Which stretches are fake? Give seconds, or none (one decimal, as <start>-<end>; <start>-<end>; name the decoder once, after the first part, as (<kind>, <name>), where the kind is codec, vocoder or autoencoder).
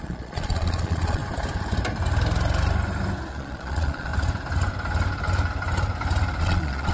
0.0-1.2 (vocoder, Vocos); 3.3-4.1; 6.4-6.9